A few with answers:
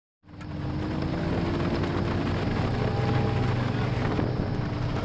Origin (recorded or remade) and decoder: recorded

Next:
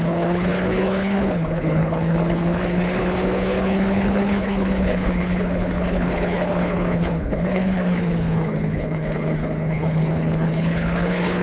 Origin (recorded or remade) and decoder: remade, codec, HILCodec